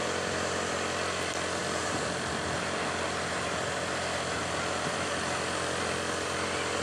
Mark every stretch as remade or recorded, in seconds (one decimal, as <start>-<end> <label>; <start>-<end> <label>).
0.0-1.6 recorded; 1.6-2.3 remade; 2.3-6.8 recorded